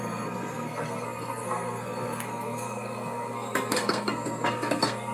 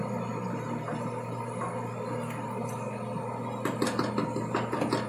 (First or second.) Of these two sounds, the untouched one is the second